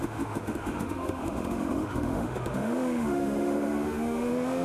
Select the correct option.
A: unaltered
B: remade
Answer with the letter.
B